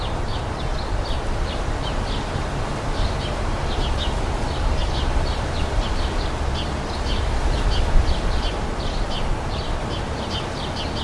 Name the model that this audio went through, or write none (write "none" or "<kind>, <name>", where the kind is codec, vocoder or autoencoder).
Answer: none